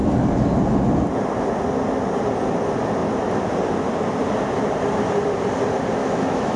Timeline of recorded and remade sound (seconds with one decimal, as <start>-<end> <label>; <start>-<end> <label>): 0.0-6.0 recorded; 6.0-6.6 remade